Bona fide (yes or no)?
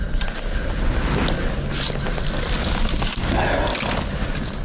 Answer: yes